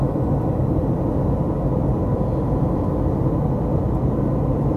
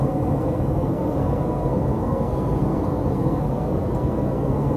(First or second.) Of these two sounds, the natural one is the first